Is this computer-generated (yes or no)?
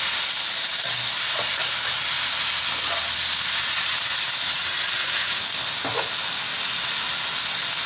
no